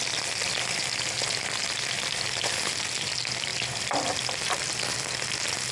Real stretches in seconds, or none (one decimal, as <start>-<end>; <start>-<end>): 0.0-5.7